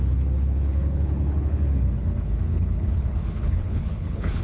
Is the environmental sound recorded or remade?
remade